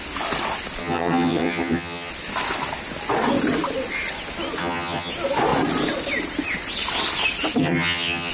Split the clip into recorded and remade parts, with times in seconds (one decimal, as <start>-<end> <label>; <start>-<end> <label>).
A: 0.0-0.8 recorded; 0.8-2.1 remade; 2.1-4.6 recorded; 4.6-5.1 remade; 5.1-7.6 recorded; 7.6-8.3 remade